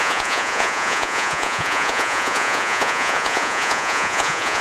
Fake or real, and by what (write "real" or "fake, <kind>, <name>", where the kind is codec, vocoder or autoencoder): fake, vocoder, Vocos